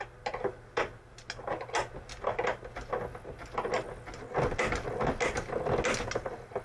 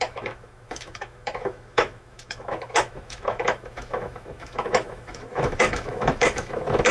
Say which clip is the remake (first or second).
second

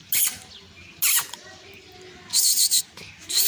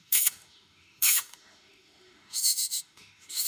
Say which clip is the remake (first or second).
second